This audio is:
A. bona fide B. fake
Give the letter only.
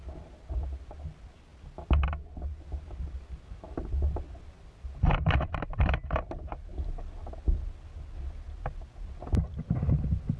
A